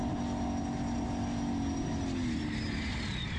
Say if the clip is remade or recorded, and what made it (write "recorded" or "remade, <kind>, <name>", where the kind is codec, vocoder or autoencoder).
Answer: recorded